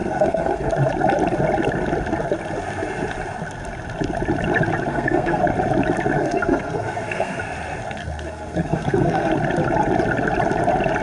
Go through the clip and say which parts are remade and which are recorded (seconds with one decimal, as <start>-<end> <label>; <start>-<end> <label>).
0.0-0.7 remade; 0.7-4.9 recorded; 4.9-5.4 remade; 5.4-6.2 recorded; 6.2-7.4 remade; 7.4-8.0 recorded; 8.0-9.3 remade; 9.3-11.0 recorded